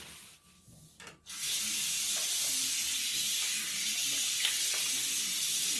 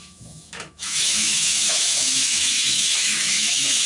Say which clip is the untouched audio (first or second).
first